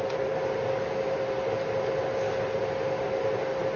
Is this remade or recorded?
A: recorded